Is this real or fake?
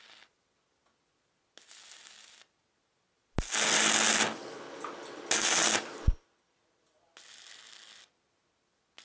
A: real